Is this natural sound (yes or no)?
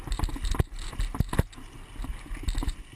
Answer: yes